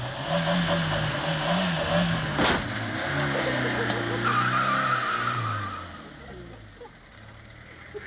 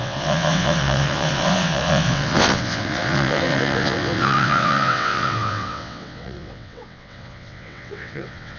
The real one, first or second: first